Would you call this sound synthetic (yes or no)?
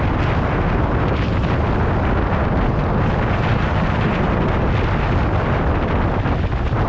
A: no